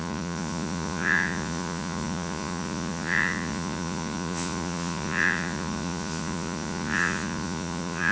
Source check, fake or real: fake